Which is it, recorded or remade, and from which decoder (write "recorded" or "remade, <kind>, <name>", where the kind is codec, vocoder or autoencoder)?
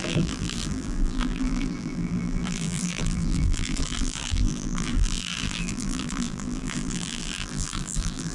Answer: remade, vocoder, BigVGAN v2